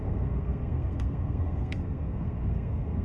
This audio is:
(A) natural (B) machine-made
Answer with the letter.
B